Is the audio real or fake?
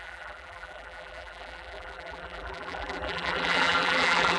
fake